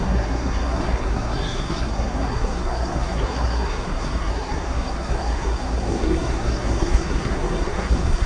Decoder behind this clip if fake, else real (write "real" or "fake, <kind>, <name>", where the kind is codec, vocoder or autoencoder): fake, codec, SNAC